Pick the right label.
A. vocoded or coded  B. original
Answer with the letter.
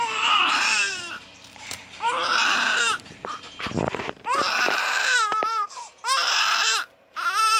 A